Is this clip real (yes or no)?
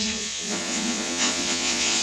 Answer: no